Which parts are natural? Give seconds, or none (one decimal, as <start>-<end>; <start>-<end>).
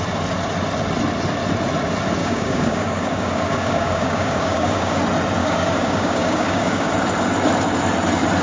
0.0-2.2; 5.0-5.4; 6.9-8.4